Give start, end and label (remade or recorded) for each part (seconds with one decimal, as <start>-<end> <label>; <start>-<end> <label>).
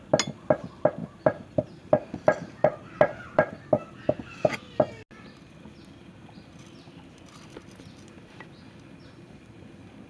0.0-1.0 recorded; 1.0-3.6 remade; 3.6-10.1 recorded